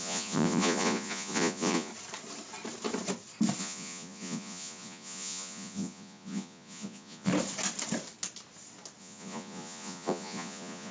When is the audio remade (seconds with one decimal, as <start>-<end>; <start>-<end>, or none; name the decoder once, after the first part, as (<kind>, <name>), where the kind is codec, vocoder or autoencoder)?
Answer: 0.0-1.9 (vocoder, Vocos); 3.6-7.3; 9.0-10.9